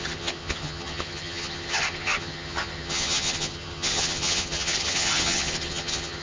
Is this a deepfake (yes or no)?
yes